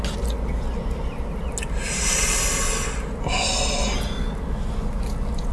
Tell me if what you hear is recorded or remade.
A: recorded